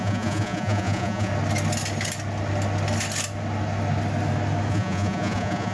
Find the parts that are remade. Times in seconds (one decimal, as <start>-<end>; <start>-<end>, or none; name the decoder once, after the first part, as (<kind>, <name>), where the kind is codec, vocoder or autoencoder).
0.0-1.3 (vocoder, Vocos); 4.7-5.7